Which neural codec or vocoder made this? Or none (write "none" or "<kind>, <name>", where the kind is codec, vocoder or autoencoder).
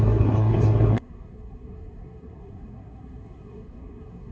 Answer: codec, SNAC